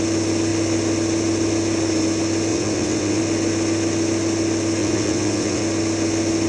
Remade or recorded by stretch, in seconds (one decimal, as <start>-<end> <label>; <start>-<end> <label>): 0.0-2.5 recorded; 2.5-3.2 remade; 3.2-4.8 recorded; 4.8-5.6 remade; 5.6-6.5 recorded